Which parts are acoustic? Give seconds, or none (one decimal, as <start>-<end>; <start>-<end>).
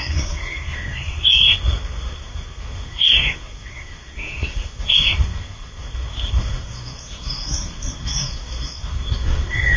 none